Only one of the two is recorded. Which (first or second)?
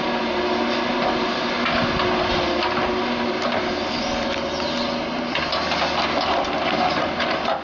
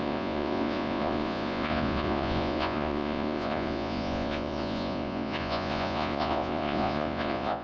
first